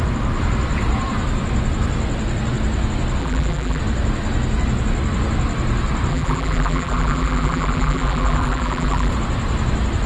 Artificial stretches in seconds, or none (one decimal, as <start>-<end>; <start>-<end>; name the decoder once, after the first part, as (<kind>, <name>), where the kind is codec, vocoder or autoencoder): 3.2-3.8 (vocoder, BigVGAN v2); 6.1-9.1